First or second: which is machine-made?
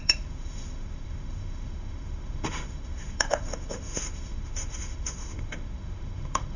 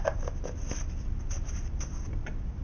first